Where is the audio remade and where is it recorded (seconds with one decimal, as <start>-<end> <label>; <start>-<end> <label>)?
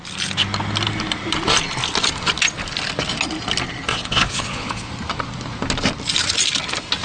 0.0-3.9 recorded; 3.9-4.9 remade; 4.9-7.0 recorded